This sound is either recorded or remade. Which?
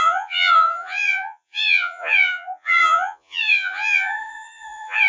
remade